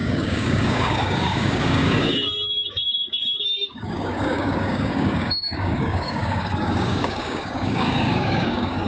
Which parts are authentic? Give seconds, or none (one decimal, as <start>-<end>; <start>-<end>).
none